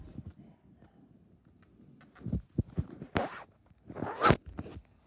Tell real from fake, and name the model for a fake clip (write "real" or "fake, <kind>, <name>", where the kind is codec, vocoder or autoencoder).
real